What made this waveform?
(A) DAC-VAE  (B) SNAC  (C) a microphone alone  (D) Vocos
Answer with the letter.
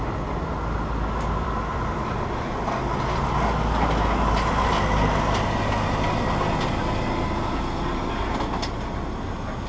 C